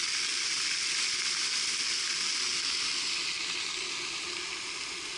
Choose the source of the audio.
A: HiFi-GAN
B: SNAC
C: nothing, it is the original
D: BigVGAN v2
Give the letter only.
C